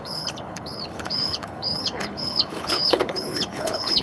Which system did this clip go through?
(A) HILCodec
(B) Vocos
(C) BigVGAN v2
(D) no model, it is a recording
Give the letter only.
A